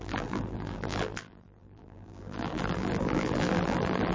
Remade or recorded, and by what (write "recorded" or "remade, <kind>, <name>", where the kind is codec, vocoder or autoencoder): remade, vocoder, BigVGAN v2